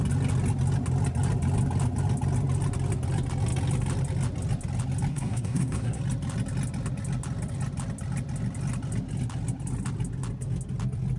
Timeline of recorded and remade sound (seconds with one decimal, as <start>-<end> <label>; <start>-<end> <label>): 0.0-5.1 recorded; 5.1-6.0 remade; 6.0-11.2 recorded